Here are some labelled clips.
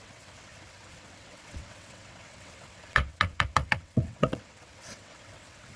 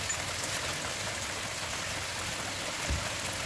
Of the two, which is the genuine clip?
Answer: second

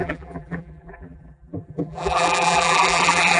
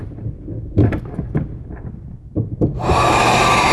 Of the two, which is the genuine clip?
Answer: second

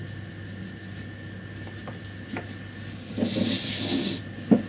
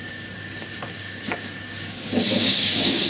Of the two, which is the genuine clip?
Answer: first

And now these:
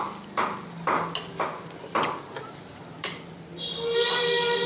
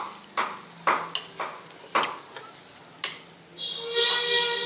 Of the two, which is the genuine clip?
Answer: second